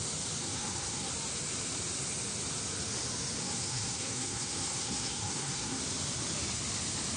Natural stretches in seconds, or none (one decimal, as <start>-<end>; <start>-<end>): 0.0-0.4; 1.1-3.4; 5.8-7.2